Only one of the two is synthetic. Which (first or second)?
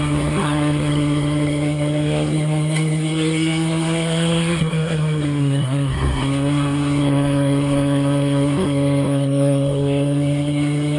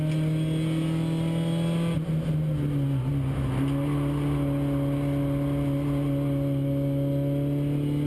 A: first